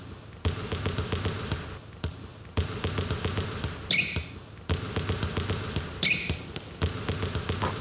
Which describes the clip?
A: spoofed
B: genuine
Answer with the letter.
B